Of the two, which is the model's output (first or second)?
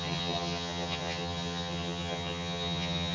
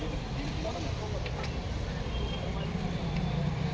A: first